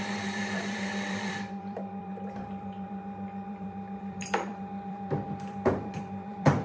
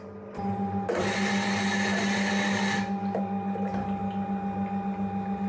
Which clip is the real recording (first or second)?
second